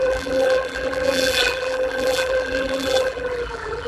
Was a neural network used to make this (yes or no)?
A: yes